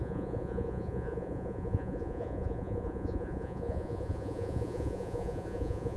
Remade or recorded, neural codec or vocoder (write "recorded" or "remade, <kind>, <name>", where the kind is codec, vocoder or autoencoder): remade, vocoder, Vocos